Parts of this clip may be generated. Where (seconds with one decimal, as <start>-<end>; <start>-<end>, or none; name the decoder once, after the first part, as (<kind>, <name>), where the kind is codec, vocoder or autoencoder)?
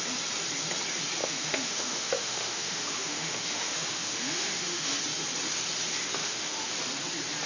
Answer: 1.2-5.0 (autoencoder, DAC-VAE); 6.2-6.7